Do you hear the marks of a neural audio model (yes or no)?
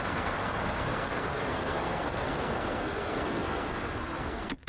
yes